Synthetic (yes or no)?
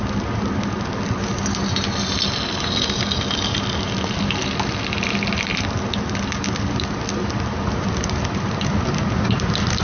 no